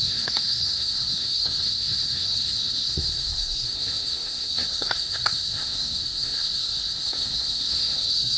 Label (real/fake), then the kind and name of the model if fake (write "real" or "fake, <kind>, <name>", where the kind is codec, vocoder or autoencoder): fake, codec, SNAC